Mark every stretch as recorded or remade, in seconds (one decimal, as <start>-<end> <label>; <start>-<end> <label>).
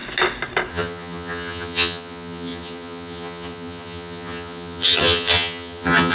0.0-0.7 recorded; 0.7-6.1 remade